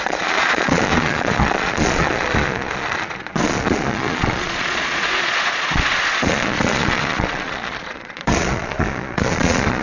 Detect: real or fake fake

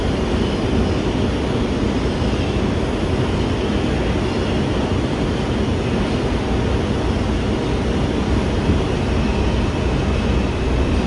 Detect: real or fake real